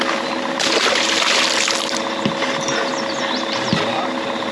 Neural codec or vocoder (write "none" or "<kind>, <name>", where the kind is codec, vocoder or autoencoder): none